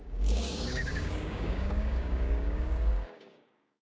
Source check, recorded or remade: remade